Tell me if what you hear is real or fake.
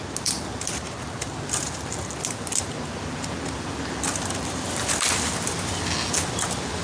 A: real